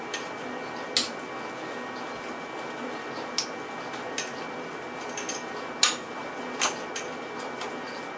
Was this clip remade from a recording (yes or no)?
no